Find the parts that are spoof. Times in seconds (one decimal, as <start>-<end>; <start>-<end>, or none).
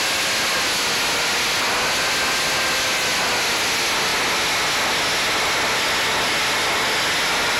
none